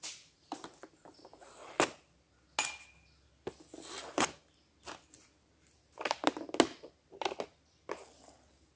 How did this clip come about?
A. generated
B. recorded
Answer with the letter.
B